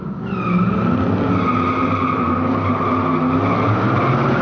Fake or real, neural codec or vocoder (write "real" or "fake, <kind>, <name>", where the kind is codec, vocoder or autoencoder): real